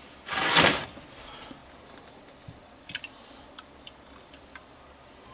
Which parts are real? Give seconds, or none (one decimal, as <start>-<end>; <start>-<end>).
0.0-1.6; 4.8-5.3